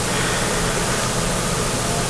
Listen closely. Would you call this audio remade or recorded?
recorded